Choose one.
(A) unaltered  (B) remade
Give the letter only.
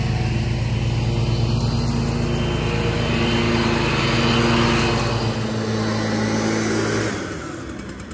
A